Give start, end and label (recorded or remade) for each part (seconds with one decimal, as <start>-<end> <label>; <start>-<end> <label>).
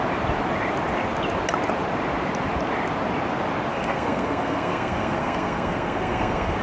0.0-3.7 recorded; 3.7-6.6 remade